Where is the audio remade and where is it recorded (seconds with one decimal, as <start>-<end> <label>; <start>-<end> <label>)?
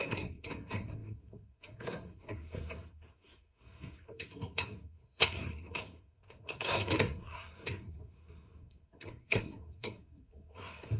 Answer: 0.0-11.0 remade